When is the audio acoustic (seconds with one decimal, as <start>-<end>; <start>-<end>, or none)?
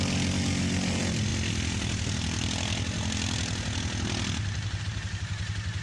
0.0-5.8